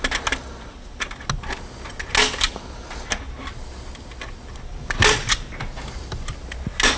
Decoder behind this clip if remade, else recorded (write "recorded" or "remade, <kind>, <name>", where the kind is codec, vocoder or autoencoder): recorded